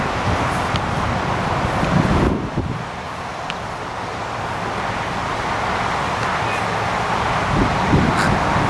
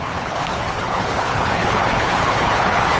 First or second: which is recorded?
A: first